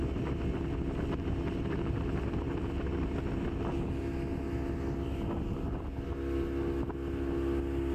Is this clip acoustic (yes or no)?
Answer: yes